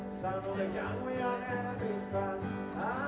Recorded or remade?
recorded